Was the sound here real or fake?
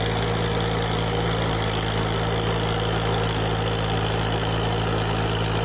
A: real